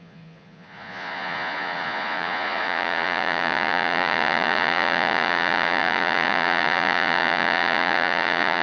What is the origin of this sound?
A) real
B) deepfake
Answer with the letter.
B